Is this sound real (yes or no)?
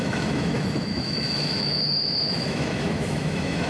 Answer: no